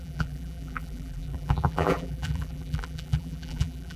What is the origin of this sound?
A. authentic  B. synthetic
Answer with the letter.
B